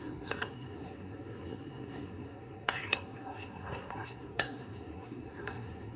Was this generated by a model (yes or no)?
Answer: yes